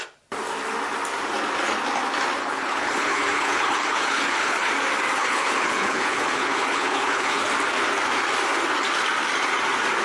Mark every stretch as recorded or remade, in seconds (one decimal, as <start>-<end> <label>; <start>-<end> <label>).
0.0-2.4 recorded; 2.4-4.7 remade; 4.7-5.2 recorded; 5.2-7.4 remade; 7.4-10.0 recorded